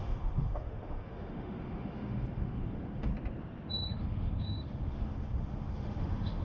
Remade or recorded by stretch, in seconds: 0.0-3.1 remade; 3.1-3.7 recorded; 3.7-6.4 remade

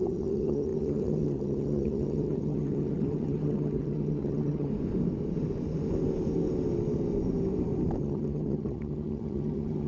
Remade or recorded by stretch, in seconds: 0.0-4.7 remade; 4.7-8.0 recorded; 8.0-9.9 remade

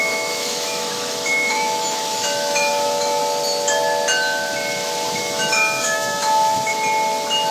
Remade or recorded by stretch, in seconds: 0.0-3.2 remade; 3.2-5.2 recorded; 5.2-6.7 remade; 6.7-7.5 recorded

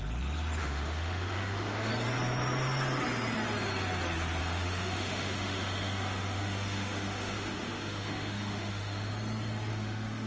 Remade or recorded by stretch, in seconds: 0.0-0.6 recorded; 0.6-1.9 remade; 1.9-4.4 recorded; 4.4-9.1 remade; 9.1-9.7 recorded; 9.7-10.3 remade

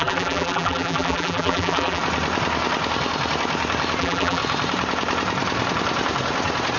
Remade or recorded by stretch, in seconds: 0.0-2.0 remade; 2.0-4.0 recorded; 4.0-4.4 remade; 4.4-6.8 recorded